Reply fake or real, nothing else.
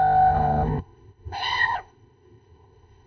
fake